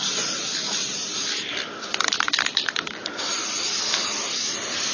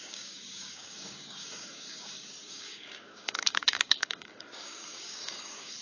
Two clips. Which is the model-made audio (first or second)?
second